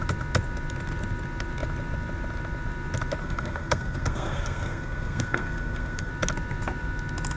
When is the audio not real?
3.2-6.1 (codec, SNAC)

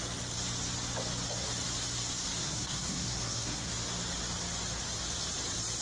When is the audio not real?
2.4-3.7 (codec, SNAC)

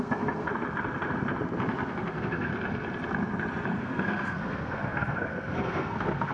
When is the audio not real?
0.0-0.5 (codec, SNAC); 1.9-2.5; 3.8-6.3